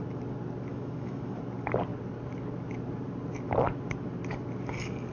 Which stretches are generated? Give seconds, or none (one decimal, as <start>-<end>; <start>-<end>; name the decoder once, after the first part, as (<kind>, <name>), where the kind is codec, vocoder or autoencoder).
0.7-1.4 (autoencoder, DAC-VAE)